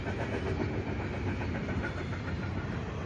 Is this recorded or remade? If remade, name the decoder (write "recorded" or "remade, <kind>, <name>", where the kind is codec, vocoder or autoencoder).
recorded